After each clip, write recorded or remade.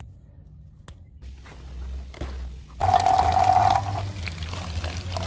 recorded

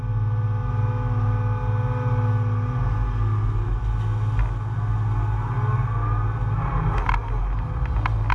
recorded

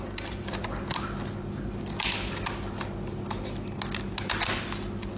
recorded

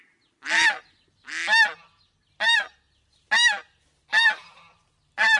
recorded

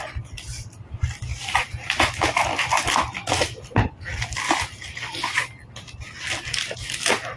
recorded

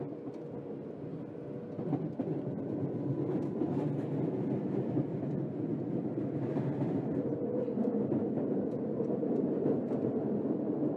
recorded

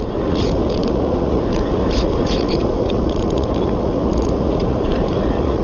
remade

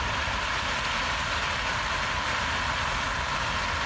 recorded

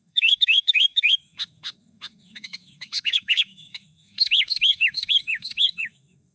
remade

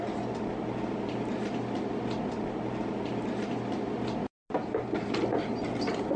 recorded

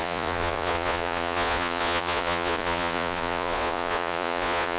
remade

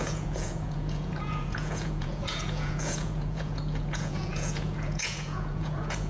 remade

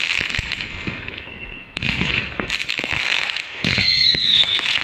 remade